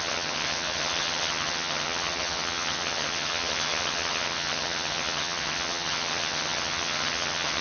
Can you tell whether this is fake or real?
fake